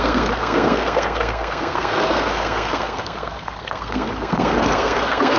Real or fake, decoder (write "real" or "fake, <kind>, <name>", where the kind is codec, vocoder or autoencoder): fake, codec, SNAC